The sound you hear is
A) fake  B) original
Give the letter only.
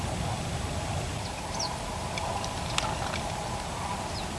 B